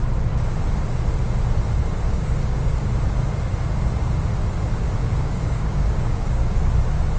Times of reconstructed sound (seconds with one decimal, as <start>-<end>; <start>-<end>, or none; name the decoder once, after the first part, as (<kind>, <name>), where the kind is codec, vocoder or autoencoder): 2.1-2.9 (codec, DAC); 5.0-6.7